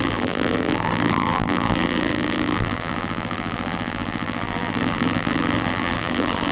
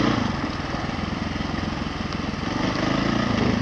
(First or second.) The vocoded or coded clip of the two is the first